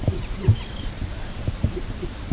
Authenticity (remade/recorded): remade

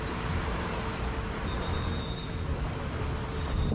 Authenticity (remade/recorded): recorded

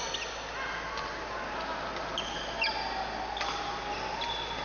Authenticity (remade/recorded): recorded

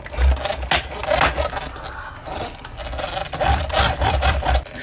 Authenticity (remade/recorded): recorded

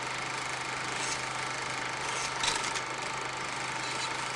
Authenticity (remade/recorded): recorded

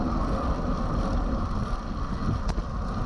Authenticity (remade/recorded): recorded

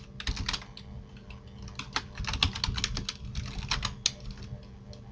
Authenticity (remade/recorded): recorded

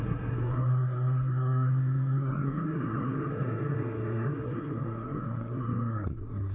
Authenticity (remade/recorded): remade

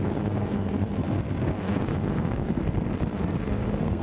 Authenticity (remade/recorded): remade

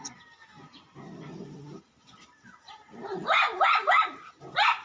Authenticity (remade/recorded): recorded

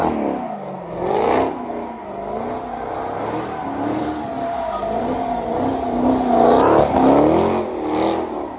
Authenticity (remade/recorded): recorded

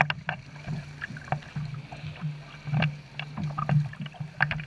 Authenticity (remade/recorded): recorded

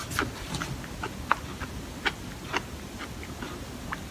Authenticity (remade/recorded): recorded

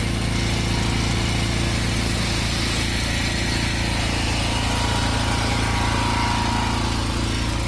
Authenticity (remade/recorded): recorded